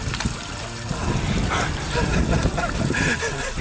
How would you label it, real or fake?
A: real